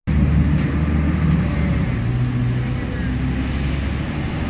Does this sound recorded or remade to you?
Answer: recorded